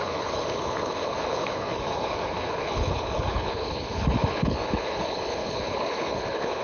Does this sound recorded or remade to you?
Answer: remade